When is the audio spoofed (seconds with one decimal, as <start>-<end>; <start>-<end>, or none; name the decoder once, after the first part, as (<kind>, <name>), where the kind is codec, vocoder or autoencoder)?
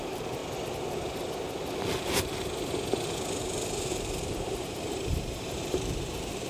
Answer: 0.0-0.4 (vocoder, BigVGAN v2); 3.4-6.5